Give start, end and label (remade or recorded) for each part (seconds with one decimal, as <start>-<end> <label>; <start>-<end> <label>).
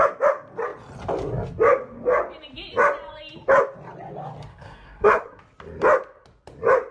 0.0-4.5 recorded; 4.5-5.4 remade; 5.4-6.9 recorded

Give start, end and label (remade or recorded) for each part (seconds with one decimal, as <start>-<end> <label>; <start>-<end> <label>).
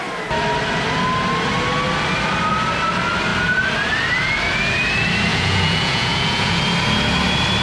0.0-5.3 recorded; 5.3-6.6 remade; 6.6-7.6 recorded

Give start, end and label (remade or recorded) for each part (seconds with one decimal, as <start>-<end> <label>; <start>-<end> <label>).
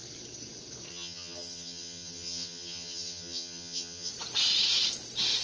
0.0-0.9 recorded; 0.9-4.1 remade; 4.1-5.4 recorded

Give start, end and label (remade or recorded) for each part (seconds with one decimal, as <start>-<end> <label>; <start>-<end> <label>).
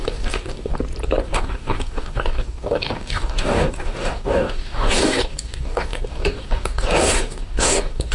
0.0-0.7 remade; 0.7-1.2 recorded; 1.2-8.1 remade